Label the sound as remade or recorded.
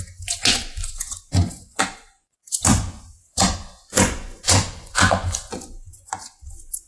remade